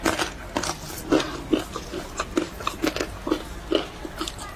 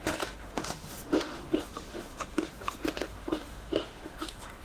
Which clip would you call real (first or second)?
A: first